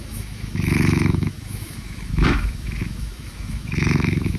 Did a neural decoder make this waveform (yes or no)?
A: yes